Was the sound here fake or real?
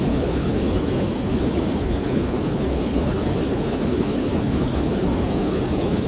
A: fake